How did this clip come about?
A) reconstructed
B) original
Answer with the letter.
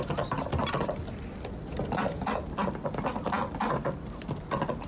B